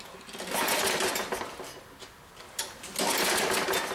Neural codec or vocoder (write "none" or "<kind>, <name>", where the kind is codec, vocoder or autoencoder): none